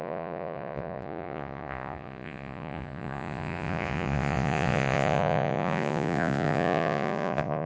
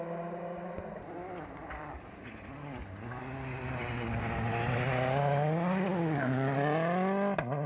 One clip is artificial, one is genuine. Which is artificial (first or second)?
first